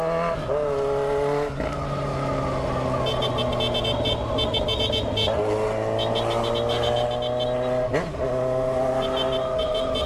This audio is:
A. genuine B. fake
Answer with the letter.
A